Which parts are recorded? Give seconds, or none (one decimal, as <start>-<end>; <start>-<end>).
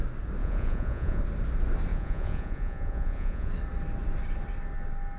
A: 0.0-0.4; 1.2-1.9; 3.5-5.2